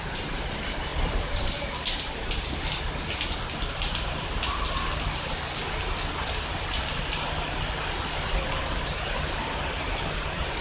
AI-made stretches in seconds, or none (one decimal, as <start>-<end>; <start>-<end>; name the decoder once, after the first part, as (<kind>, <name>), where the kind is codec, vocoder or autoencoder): none